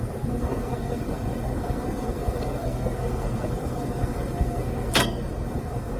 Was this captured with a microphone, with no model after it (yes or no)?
no